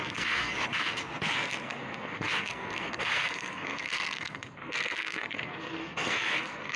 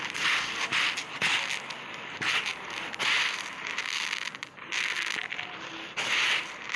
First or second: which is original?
second